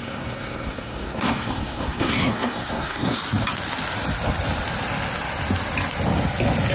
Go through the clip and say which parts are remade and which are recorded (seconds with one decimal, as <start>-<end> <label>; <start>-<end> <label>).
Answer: 0.0-3.2 remade; 3.2-6.7 recorded